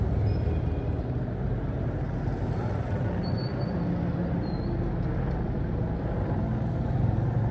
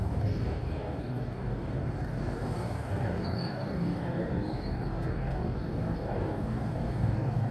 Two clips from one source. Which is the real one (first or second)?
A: first